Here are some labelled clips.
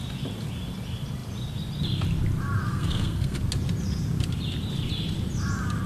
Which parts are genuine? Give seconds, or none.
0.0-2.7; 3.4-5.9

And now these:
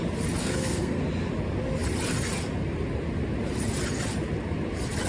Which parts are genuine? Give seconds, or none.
0.0-0.4; 1.0-5.1